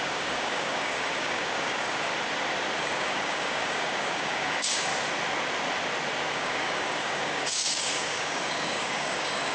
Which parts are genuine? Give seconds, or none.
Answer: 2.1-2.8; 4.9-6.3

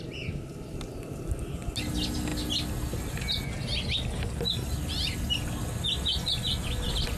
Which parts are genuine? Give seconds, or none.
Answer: 0.0-7.2

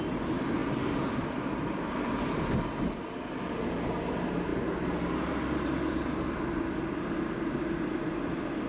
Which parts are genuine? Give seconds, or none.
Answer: 0.0-8.7

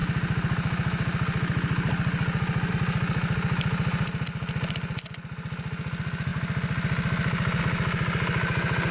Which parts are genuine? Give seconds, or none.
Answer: 0.0-8.9

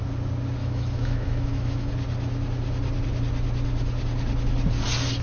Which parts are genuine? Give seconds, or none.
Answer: 0.0-0.6; 1.9-5.2

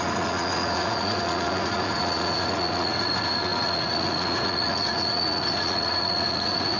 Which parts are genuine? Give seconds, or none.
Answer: none

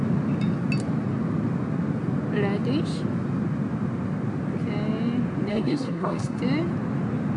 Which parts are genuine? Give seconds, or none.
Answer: 0.0-5.5; 6.4-7.4

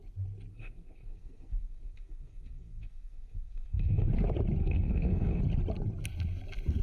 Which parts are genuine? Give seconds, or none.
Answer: 0.0-0.5; 4.1-4.6; 5.4-6.8